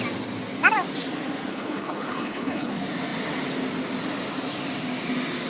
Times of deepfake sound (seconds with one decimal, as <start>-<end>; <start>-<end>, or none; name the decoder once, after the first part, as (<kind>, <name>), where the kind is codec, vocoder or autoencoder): 1.5-2.7 (codec, HILCodec)